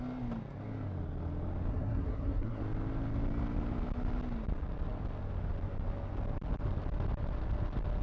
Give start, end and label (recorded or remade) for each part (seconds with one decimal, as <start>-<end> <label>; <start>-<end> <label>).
0.0-1.7 recorded; 1.7-2.6 remade; 2.6-8.0 recorded